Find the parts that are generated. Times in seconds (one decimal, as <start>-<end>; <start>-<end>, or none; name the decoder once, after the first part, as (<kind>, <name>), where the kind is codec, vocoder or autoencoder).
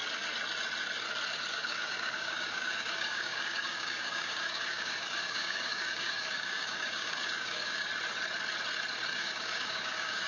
1.5-7.9 (codec, DAC); 9.1-10.3